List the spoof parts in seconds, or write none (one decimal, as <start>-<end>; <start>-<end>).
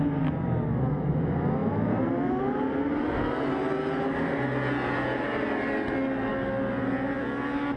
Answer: none